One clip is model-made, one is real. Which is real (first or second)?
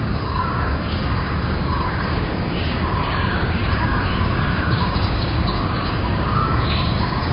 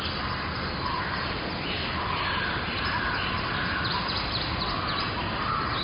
second